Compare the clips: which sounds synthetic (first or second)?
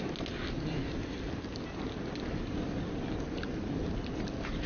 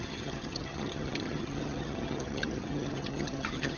second